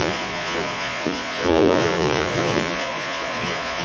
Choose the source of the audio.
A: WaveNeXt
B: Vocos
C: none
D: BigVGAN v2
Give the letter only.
B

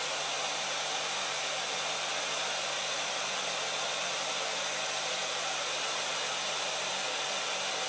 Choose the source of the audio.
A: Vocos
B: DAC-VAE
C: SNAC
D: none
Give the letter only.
D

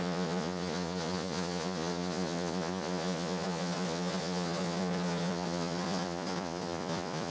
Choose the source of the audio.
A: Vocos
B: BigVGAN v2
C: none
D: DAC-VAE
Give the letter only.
A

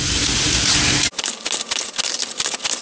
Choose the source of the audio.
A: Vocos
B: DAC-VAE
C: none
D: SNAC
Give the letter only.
C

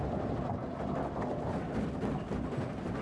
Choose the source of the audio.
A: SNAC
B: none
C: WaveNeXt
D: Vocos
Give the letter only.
B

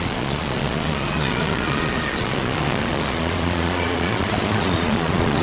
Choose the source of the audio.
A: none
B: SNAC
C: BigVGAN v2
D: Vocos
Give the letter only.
D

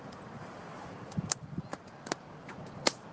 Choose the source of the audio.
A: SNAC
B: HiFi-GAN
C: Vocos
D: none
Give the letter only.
D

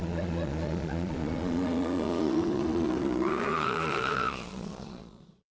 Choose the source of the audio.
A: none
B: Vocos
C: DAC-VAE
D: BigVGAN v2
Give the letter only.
B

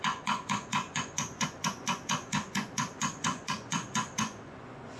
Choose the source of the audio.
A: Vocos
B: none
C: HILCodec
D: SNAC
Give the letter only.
A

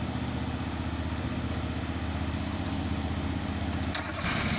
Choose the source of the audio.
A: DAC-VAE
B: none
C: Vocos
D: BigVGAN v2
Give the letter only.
B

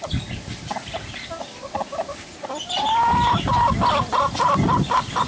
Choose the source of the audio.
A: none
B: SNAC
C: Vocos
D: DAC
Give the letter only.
A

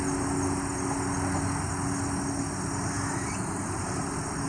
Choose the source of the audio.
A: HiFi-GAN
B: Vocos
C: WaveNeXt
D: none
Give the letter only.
D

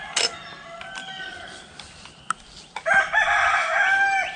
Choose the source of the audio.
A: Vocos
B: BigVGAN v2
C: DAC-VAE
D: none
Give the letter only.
D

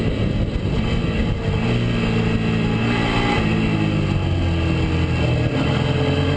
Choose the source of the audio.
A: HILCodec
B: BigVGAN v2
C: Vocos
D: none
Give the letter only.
D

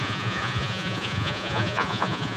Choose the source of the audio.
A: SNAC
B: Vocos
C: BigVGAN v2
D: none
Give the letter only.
B